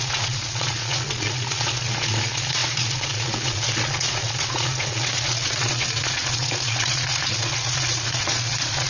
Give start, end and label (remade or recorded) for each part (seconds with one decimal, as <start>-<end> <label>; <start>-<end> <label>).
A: 0.0-8.9 remade